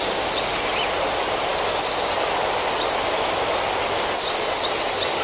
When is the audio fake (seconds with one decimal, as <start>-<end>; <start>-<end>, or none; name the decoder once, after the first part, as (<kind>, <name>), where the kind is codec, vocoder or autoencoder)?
1.5-4.6 (vocoder, BigVGAN v2)